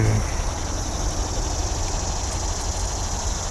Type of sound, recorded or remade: recorded